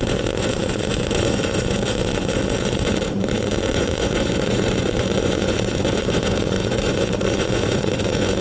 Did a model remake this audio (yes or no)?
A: yes